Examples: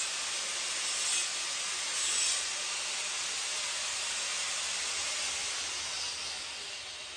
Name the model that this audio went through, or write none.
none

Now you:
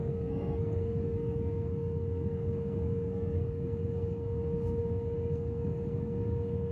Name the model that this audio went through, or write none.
codec, SNAC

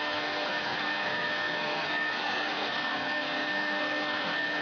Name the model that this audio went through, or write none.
codec, SNAC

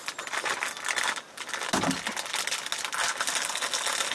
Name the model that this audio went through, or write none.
none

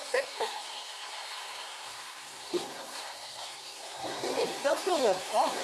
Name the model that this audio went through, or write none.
codec, SNAC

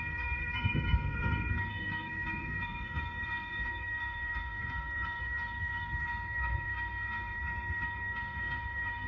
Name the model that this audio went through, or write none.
codec, SNAC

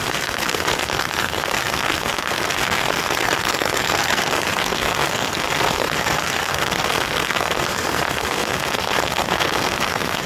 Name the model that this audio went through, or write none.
codec, SNAC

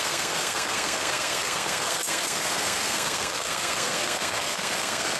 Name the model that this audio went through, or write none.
codec, SNAC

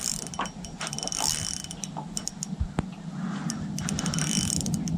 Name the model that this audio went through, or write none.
none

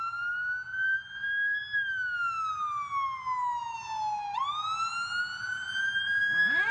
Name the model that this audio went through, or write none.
none